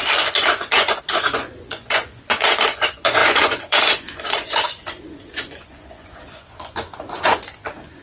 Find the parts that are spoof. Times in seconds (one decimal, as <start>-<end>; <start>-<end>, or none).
0.0-8.0